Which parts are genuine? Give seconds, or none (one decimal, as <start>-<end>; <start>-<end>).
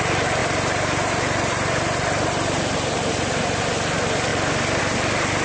0.0-0.4; 3.6-5.4